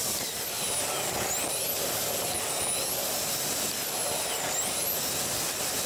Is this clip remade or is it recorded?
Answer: recorded